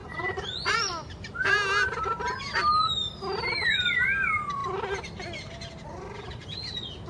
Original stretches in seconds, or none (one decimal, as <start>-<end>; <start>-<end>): 0.8-7.1